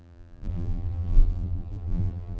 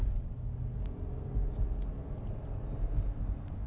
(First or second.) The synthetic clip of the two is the first